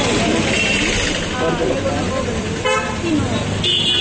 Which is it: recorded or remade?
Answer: recorded